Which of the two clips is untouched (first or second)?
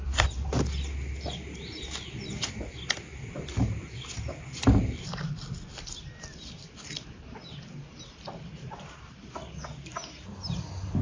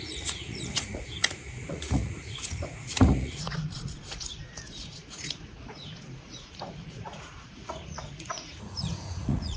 first